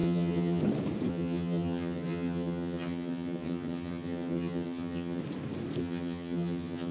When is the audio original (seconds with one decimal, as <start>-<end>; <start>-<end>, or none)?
0.6-1.1; 5.2-5.8

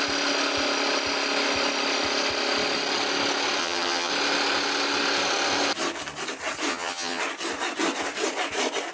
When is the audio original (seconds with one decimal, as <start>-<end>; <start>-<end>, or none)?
0.0-3.6; 4.1-6.7; 7.2-8.9

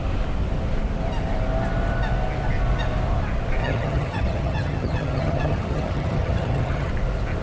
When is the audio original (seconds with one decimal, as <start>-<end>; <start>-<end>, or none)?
0.0-3.6; 6.9-7.4

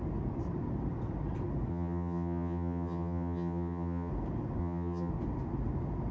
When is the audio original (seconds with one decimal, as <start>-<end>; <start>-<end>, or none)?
0.0-1.7; 4.1-4.6; 5.1-6.1